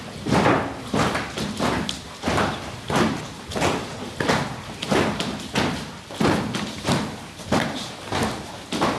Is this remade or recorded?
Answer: recorded